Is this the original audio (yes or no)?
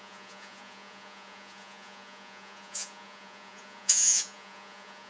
no